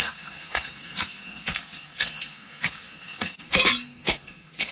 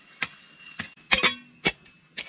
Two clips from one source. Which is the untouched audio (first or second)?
second